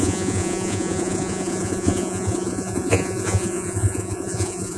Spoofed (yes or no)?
yes